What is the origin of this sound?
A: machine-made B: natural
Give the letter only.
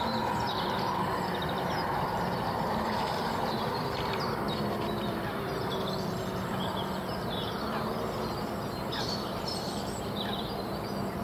A